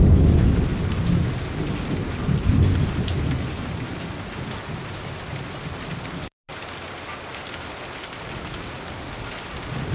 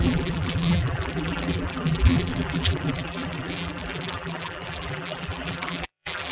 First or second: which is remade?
second